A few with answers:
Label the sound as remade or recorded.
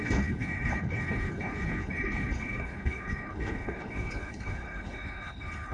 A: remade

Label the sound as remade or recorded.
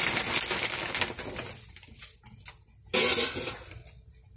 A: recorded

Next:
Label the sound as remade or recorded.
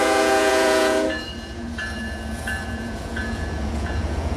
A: remade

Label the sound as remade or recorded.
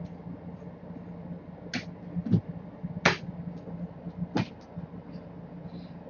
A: recorded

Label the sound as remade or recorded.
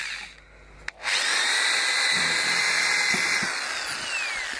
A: recorded